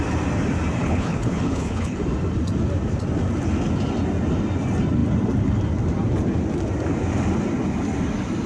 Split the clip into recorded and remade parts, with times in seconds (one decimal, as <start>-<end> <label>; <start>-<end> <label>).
0.0-0.8 recorded; 0.8-2.0 remade; 2.0-8.5 recorded